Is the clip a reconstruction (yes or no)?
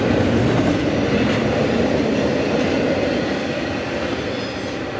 no